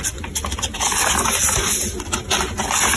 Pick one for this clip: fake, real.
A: real